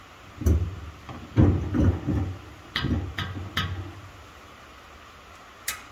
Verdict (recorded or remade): recorded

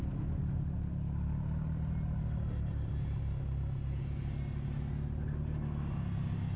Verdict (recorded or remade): recorded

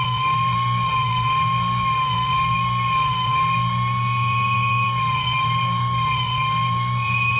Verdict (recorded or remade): remade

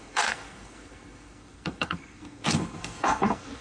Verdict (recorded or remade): remade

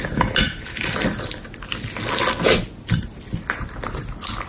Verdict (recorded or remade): recorded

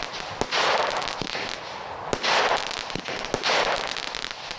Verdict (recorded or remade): recorded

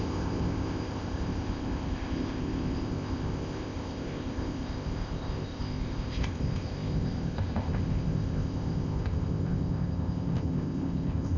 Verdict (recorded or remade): remade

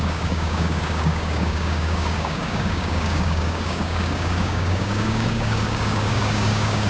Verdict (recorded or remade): remade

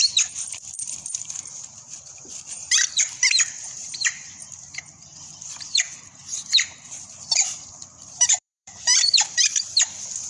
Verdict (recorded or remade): remade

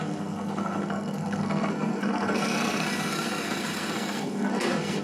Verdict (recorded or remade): remade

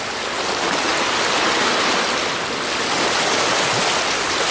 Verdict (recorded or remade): recorded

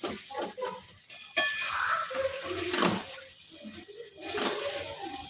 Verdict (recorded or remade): recorded